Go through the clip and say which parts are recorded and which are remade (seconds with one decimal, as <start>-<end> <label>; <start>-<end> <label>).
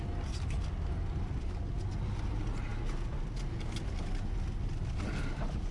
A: 0.0-5.7 recorded